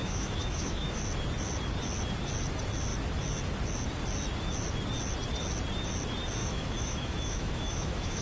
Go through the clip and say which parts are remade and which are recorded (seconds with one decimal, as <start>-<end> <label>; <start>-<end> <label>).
0.0-1.0 remade; 1.0-6.4 recorded; 6.4-8.2 remade